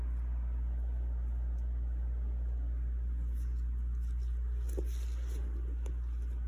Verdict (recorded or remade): recorded